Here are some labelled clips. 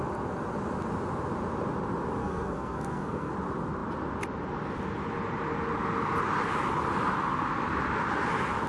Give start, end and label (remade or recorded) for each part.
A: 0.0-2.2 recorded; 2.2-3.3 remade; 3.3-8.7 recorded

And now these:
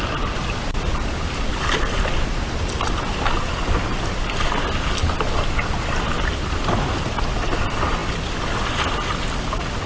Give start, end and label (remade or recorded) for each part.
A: 0.0-9.9 recorded

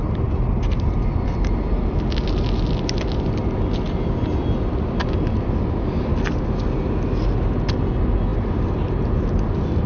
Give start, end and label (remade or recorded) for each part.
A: 0.0-9.9 recorded

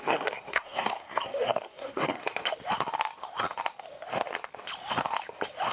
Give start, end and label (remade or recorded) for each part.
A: 0.0-2.2 remade; 2.2-5.7 recorded

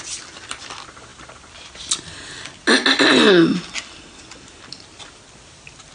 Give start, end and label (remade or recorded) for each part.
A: 0.0-5.9 recorded